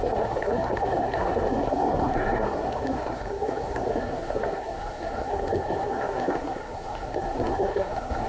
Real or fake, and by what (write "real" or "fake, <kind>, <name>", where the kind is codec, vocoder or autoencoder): fake, codec, SNAC